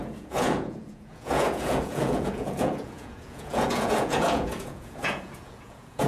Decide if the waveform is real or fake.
fake